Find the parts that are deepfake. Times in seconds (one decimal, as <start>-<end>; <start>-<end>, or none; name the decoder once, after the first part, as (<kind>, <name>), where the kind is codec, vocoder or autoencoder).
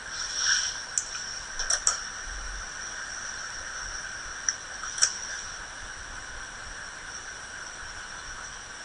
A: none